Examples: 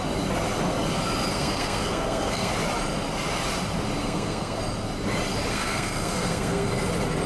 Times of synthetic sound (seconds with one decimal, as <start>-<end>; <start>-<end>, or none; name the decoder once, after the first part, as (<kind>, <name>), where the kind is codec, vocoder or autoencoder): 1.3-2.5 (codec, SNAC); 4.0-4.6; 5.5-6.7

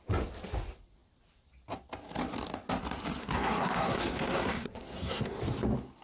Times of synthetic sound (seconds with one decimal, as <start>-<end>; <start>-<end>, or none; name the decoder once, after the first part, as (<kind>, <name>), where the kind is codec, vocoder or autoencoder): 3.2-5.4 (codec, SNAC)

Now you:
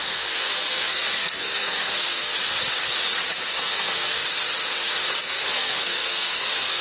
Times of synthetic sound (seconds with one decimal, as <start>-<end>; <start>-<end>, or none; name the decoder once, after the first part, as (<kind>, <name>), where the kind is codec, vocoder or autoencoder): 0.0-2.3 (codec, SNAC); 3.5-4.2; 5.2-6.8

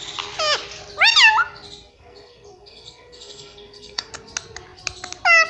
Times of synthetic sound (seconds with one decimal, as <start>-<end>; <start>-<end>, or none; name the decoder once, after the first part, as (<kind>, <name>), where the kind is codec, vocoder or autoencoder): 1.9-4.1 (codec, SNAC)

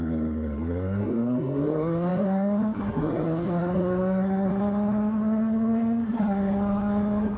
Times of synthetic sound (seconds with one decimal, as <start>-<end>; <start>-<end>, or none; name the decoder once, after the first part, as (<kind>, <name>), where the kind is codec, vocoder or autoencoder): 0.0-7.4 (codec, SNAC)

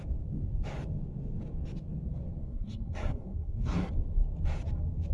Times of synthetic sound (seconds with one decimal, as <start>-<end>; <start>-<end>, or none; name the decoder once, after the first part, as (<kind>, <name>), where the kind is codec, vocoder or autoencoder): 2.4-3.9 (codec, SNAC)

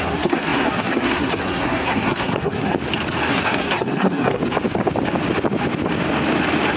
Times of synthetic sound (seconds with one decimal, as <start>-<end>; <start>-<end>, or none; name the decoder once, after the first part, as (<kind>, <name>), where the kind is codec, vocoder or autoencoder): 0.0-2.7 (codec, SNAC); 3.3-4.4